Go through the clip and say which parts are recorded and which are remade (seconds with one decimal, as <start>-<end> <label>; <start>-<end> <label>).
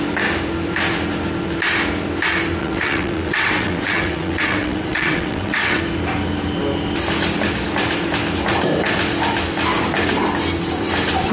0.0-2.6 recorded; 2.6-5.8 remade; 5.8-11.3 recorded